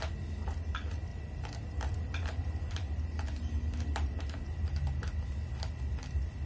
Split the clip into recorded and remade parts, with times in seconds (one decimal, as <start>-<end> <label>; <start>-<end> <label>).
0.0-1.1 recorded; 1.1-5.0 remade; 5.0-6.5 recorded